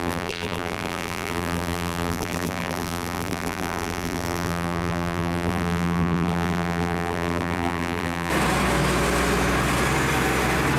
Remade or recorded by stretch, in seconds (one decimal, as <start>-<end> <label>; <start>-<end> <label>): 0.0-8.3 remade; 8.3-10.8 recorded